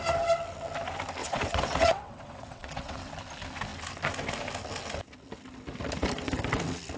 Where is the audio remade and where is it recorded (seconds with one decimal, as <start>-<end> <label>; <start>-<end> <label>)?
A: 0.0-1.2 recorded; 1.2-3.0 remade; 3.0-7.0 recorded